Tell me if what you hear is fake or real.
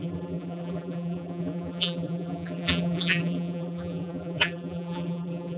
fake